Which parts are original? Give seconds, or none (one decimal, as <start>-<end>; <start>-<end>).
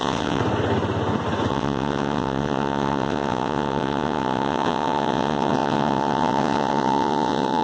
0.4-1.5